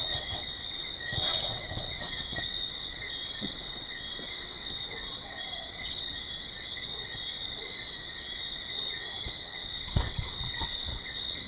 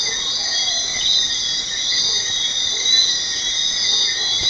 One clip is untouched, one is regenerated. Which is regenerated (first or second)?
first